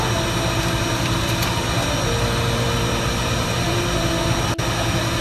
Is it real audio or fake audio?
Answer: real